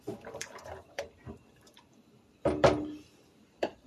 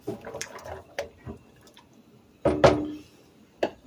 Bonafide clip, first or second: second